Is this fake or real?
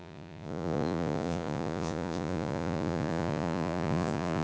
fake